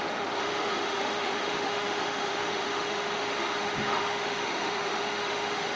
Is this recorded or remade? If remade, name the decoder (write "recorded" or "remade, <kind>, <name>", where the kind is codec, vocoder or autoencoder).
remade, autoencoder, DAC-VAE